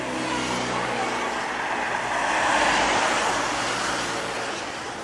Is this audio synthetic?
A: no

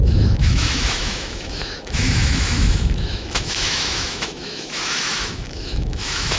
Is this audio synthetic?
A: yes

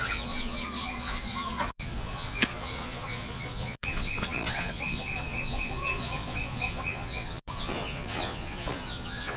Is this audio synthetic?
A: yes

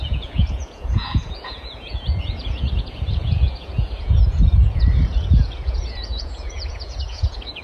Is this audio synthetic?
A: yes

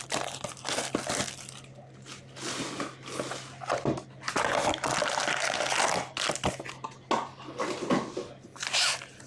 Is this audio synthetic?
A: no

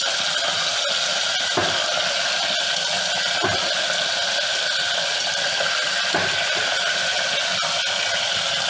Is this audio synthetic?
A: no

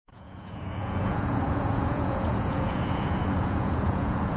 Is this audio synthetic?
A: yes